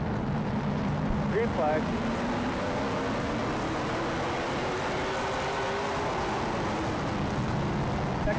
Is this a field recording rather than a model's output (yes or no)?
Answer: yes